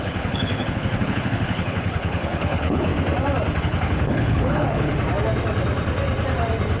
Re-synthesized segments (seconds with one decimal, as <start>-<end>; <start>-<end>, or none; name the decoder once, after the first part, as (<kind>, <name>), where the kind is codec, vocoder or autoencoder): 0.0-2.9 (codec, HILCodec); 3.6-4.9